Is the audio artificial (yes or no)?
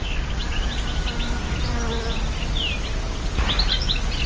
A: no